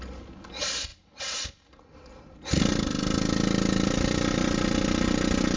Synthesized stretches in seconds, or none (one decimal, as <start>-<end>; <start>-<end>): none